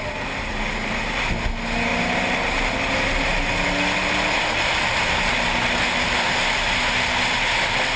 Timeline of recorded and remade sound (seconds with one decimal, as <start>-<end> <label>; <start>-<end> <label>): 0.0-8.0 recorded